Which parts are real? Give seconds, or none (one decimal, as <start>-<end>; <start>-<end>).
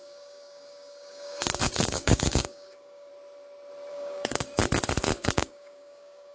3.1-3.9; 4.6-5.2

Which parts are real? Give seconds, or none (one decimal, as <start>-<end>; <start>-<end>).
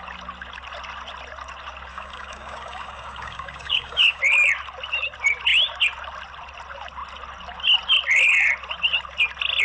0.0-1.9; 4.2-9.6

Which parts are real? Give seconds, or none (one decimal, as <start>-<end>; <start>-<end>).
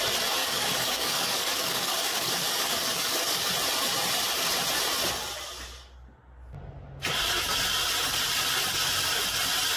0.0-0.4; 3.5-9.8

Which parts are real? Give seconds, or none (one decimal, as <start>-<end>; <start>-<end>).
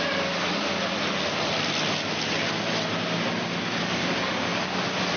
0.7-3.8; 4.5-5.2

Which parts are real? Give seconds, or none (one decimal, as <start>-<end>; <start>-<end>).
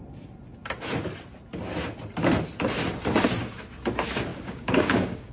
0.0-4.3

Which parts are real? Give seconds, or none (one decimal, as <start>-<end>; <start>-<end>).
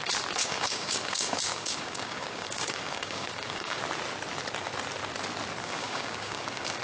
0.0-0.4; 3.8-5.6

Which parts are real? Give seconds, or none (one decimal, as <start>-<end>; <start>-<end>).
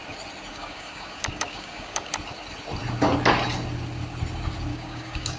0.0-0.5; 2.1-4.7